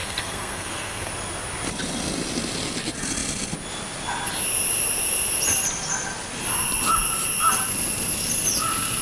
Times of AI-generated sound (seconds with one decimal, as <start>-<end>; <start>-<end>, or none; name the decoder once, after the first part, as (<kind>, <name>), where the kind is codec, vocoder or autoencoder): 0.0-1.1 (codec, SNAC)